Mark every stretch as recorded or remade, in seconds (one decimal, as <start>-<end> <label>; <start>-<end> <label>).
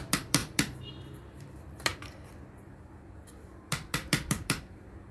0.0-1.9 remade; 1.9-3.4 recorded; 3.4-5.1 remade